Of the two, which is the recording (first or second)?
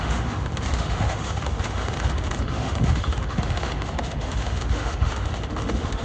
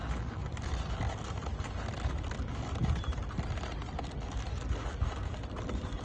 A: second